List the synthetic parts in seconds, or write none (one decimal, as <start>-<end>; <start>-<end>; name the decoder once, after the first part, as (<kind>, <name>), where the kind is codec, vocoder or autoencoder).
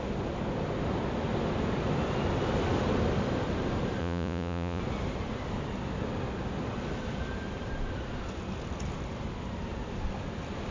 4.0-4.8 (vocoder, Vocos)